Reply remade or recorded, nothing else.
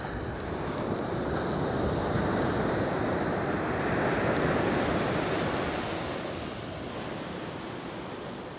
recorded